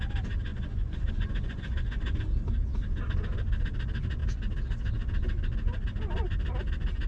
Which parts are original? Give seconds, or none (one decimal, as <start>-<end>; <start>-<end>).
0.0-0.5; 2.2-7.1